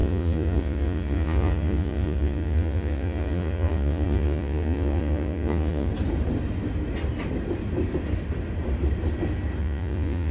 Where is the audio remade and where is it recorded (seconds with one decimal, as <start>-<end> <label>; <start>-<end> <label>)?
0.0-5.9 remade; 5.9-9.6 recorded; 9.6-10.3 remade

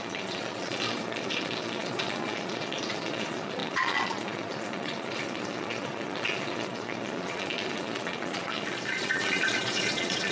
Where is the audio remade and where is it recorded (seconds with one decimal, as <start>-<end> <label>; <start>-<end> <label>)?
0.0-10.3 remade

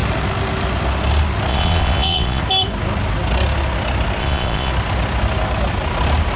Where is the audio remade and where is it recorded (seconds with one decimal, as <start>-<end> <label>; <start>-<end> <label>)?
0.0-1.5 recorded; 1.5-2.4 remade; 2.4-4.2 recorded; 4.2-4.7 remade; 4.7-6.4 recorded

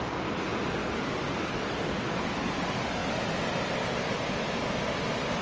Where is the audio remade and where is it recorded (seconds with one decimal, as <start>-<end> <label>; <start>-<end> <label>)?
0.0-5.4 recorded

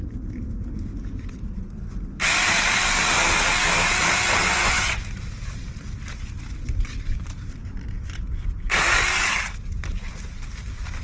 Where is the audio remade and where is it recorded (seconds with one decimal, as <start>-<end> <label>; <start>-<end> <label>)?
0.0-4.5 recorded; 4.5-5.1 remade; 5.1-11.0 recorded